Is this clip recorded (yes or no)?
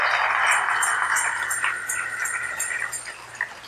yes